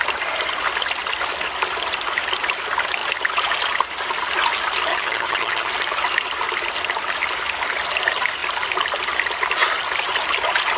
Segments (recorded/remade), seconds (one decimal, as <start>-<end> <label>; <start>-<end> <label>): 0.0-4.9 recorded; 4.9-5.7 remade; 5.7-10.8 recorded